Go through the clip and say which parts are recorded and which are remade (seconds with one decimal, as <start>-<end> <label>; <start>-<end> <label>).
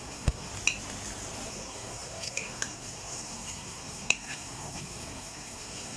0.0-0.5 remade; 0.5-1.5 recorded; 1.5-6.0 remade